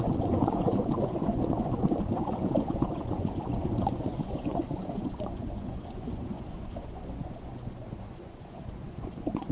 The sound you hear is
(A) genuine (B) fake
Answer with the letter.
B